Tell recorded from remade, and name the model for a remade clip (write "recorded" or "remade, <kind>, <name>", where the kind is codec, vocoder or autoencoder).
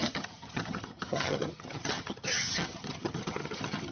remade, vocoder, HiFi-GAN